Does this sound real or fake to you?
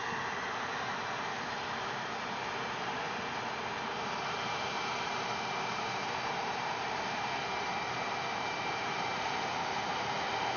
fake